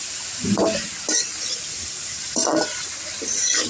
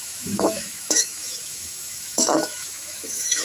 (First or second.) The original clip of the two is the first